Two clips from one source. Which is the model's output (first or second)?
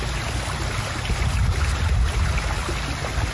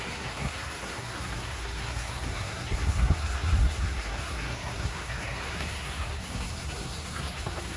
second